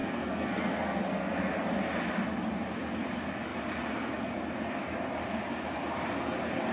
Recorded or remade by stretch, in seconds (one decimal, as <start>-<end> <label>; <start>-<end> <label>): 0.0-1.5 remade; 1.5-6.7 recorded